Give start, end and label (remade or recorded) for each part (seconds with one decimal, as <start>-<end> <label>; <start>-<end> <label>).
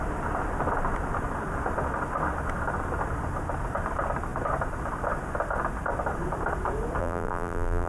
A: 0.0-7.0 recorded; 7.0-7.9 remade